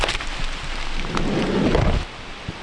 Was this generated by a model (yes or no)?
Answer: no